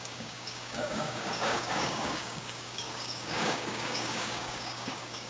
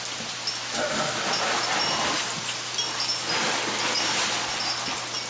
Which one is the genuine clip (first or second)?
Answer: second